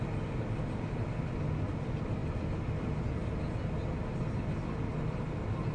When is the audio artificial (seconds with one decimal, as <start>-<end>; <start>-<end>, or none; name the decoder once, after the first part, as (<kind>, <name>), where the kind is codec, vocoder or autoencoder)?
none